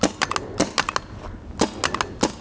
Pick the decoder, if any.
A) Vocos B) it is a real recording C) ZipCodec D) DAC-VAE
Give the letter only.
B